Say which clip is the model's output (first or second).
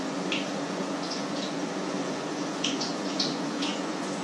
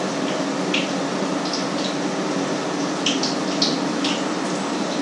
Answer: first